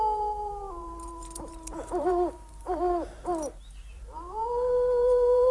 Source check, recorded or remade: remade